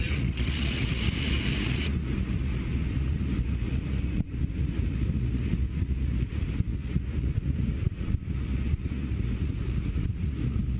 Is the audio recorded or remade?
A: remade